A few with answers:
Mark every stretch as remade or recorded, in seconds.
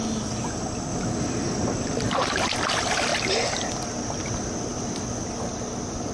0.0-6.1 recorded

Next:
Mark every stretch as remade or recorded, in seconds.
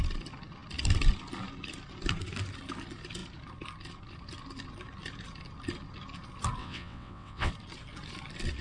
0.0-6.6 recorded; 6.6-7.5 remade; 7.5-8.6 recorded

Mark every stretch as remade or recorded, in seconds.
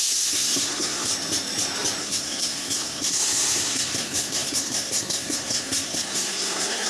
0.0-1.1 remade; 1.1-2.0 recorded; 2.0-6.9 remade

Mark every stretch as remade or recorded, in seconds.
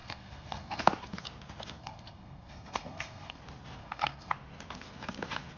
0.0-0.8 remade; 0.8-1.8 recorded; 1.8-3.4 remade; 3.4-3.8 recorded; 3.8-4.3 remade; 4.3-5.6 recorded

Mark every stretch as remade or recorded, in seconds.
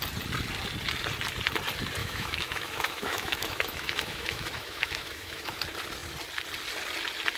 0.0-2.0 recorded; 2.0-5.6 remade; 5.6-7.4 recorded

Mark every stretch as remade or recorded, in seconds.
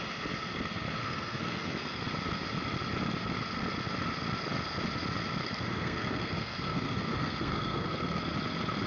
0.0-1.0 recorded; 1.0-2.0 remade; 2.0-5.4 recorded; 5.4-8.2 remade; 8.2-8.9 recorded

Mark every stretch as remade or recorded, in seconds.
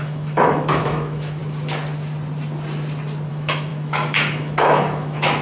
0.0-1.4 remade; 1.4-3.3 recorded; 3.3-5.4 remade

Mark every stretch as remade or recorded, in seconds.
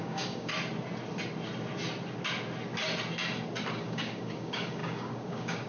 0.0-0.5 remade; 0.5-3.7 recorded; 3.7-5.7 remade